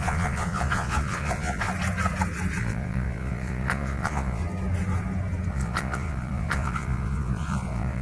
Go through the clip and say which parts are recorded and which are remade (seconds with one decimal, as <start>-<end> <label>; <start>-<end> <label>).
0.0-1.7 remade; 1.7-2.6 recorded; 2.6-4.4 remade; 4.4-5.5 recorded; 5.5-8.0 remade